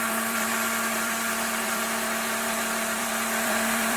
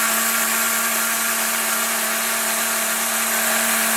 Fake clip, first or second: first